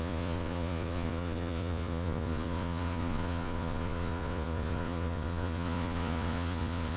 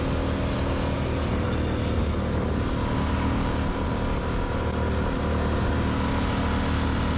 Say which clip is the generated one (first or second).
first